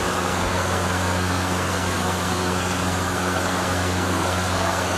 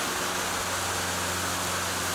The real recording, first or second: second